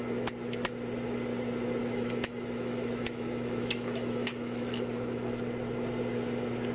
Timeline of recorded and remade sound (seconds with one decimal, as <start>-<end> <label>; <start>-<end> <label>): 0.0-1.8 recorded; 1.8-5.4 remade; 5.4-6.7 recorded